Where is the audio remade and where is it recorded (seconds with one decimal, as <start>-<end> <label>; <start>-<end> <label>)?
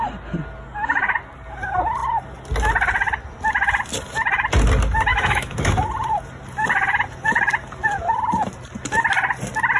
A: 0.0-5.1 recorded; 5.1-5.7 remade; 5.7-9.8 recorded